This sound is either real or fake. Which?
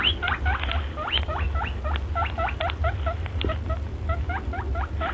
real